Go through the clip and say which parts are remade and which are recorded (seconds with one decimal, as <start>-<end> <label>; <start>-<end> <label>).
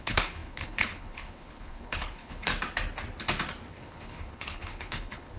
0.0-2.5 remade; 2.5-3.7 recorded; 3.7-5.4 remade